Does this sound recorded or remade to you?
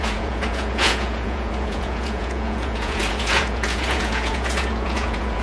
remade